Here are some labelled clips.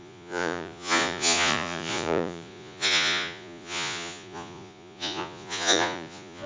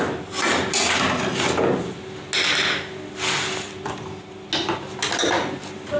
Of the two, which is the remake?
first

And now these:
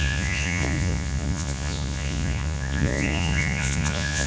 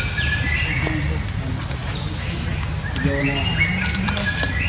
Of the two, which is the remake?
first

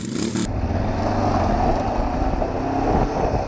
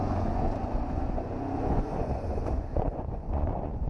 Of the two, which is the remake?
second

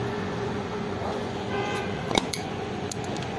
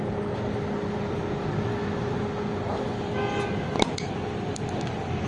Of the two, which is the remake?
first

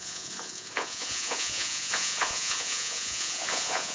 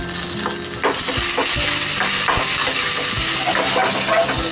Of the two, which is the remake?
first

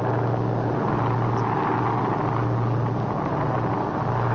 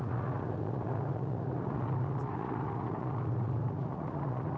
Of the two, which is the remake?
second